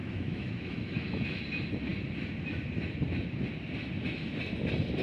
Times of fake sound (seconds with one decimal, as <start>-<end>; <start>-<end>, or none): 0.0-1.4